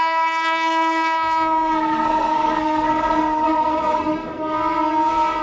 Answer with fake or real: fake